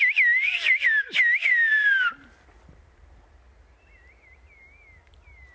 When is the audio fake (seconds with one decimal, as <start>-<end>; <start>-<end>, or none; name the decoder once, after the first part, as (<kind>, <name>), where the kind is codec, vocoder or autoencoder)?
none